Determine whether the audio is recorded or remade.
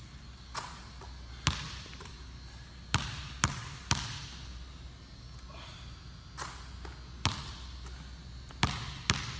recorded